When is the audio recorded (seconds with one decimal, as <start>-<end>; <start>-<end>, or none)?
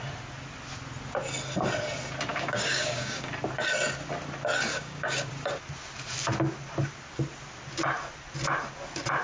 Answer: 0.0-2.3; 3.3-4.7; 5.3-9.2